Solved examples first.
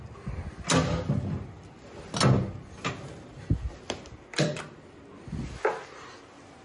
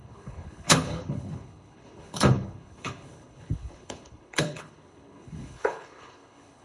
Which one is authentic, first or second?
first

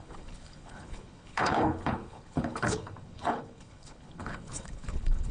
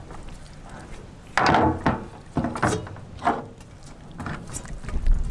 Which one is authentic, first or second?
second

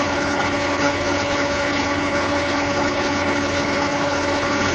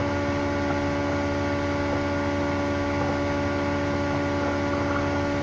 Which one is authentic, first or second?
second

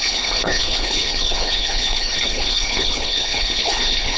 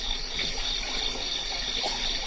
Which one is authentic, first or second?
second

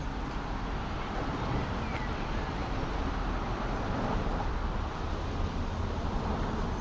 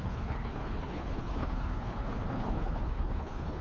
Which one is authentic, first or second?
first